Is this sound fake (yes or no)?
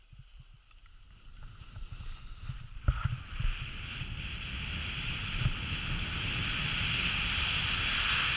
no